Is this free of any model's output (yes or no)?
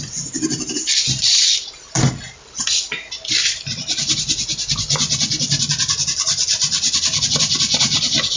yes